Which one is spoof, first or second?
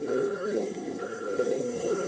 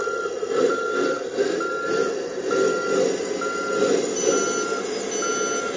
first